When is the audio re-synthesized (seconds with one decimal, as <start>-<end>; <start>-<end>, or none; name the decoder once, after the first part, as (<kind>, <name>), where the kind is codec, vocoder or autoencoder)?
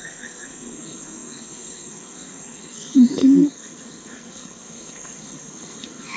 0.0-6.2 (codec, SNAC)